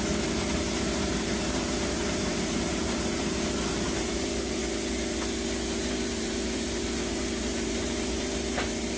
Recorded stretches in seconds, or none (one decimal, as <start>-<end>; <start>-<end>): 4.6-6.1